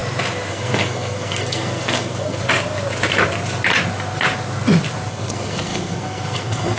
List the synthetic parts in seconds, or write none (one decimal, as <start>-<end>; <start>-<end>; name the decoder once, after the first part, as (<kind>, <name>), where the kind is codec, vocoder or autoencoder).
0.5-2.4 (codec, SNAC); 5.1-6.8